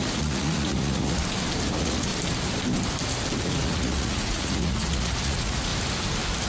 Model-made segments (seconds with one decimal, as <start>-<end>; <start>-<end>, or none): 0.0-1.2; 1.7-2.1; 3.4-5.7

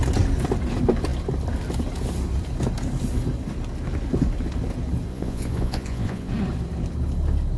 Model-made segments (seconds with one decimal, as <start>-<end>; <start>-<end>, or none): 5.1-6.3

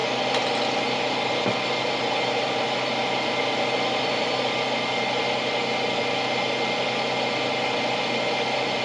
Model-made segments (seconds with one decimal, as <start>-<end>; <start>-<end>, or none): none

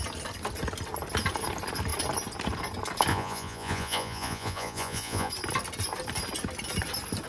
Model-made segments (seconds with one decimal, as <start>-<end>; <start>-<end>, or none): 3.1-5.3